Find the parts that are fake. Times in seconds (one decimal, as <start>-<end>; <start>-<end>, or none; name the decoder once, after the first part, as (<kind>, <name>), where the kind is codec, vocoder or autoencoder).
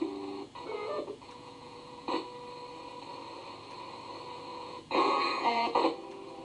0.8-2.1 (vocoder, Vocos); 4.5-5.8